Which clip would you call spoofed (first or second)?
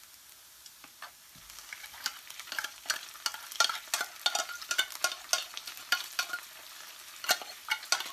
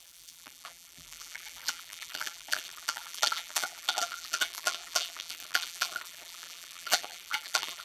second